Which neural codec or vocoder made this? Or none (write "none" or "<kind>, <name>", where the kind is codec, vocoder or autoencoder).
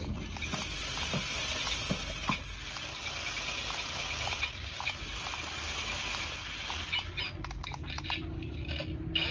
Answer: none